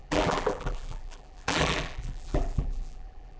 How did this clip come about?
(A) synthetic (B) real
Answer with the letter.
A